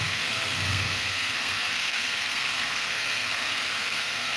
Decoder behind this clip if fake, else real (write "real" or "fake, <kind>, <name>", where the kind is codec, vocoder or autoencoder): fake, codec, SNAC